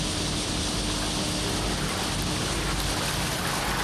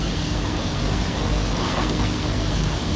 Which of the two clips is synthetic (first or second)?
second